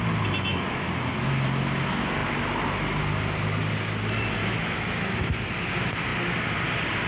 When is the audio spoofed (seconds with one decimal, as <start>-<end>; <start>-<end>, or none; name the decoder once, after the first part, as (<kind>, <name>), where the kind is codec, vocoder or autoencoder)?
0.5-1.3 (autoencoder, DAC-VAE); 4.4-5.3